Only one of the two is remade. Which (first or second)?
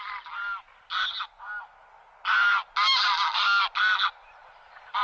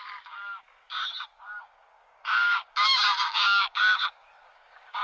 second